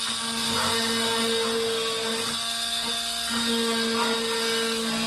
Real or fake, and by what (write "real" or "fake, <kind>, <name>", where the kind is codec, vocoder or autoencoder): real